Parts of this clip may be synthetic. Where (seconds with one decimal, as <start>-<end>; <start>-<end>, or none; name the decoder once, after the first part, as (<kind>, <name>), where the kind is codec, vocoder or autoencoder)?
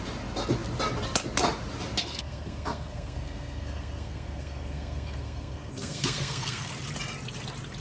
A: 2.0-6.7 (codec, SNAC)